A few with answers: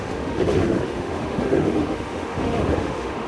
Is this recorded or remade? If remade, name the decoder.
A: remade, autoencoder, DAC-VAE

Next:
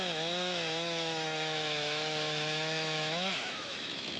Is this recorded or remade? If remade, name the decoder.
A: remade, autoencoder, DAC-VAE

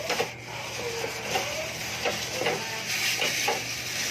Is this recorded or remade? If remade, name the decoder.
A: recorded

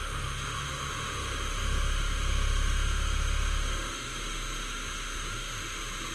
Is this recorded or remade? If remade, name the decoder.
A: remade, autoencoder, DAC-VAE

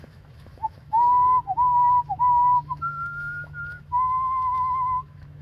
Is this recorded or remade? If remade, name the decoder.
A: remade, autoencoder, DAC-VAE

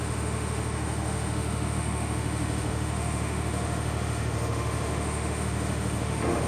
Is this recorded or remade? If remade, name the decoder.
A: remade, autoencoder, DAC-VAE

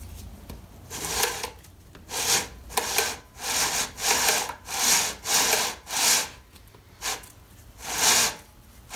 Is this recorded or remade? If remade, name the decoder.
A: recorded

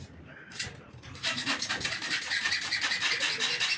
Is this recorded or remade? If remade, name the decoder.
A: recorded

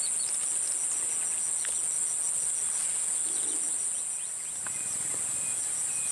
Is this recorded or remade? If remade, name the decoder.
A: recorded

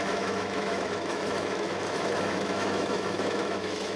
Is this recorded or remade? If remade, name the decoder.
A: remade, autoencoder, DAC-VAE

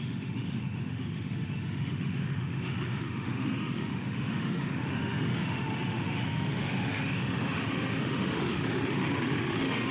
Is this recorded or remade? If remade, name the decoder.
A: remade, autoencoder, DAC-VAE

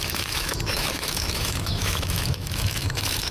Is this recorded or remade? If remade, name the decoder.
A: remade, autoencoder, DAC-VAE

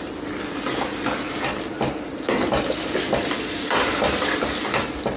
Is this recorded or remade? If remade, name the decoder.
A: recorded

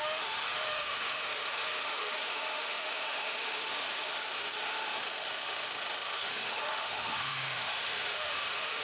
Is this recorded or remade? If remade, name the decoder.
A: remade, autoencoder, DAC-VAE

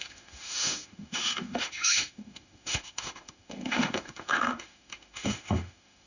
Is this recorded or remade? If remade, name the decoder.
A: remade, autoencoder, DAC-VAE